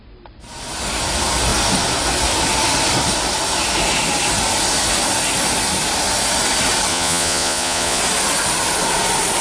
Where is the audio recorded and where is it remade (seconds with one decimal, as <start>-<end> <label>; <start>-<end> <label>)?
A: 0.0-6.9 recorded; 6.9-8.0 remade; 8.0-9.4 recorded